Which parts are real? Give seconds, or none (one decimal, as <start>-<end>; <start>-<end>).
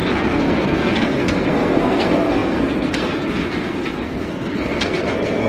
none